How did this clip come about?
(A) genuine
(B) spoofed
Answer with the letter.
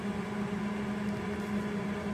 A